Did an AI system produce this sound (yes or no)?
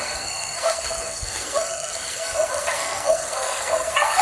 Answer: yes